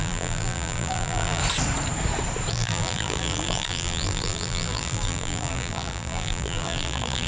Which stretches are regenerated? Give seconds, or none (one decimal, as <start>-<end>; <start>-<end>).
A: 0.0-1.4; 2.5-7.3